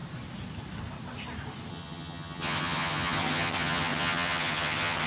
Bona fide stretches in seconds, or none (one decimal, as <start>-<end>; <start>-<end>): 0.0-1.7